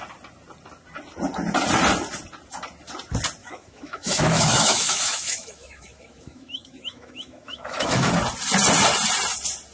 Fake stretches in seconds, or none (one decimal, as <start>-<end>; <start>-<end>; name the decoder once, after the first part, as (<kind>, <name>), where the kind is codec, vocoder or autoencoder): 3.4-8.1 (autoencoder, DAC-VAE)